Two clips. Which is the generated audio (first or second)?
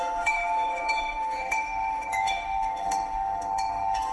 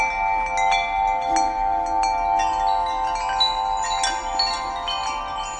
first